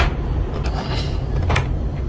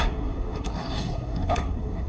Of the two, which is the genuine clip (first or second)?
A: first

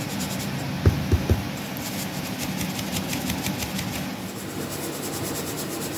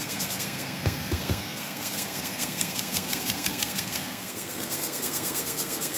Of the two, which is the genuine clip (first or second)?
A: first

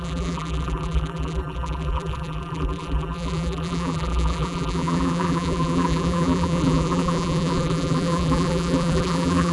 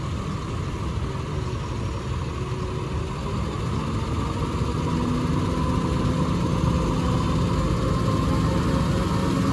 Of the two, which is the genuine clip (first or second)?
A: second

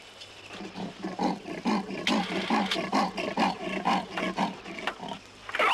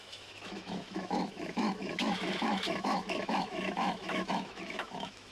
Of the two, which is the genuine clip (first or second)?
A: first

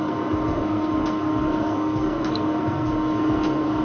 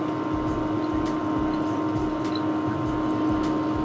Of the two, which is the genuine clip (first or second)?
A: second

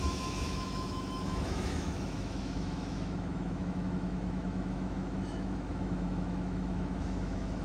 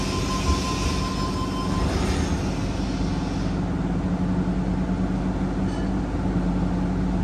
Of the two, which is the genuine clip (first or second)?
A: second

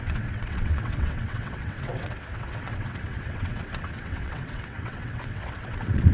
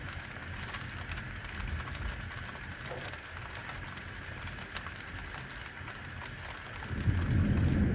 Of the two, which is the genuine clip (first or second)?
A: second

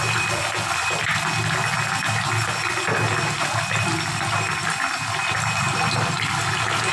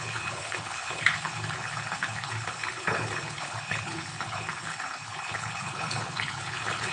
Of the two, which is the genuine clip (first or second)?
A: first